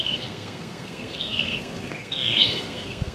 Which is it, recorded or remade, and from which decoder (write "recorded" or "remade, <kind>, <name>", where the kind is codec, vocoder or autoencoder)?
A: remade, codec, SNAC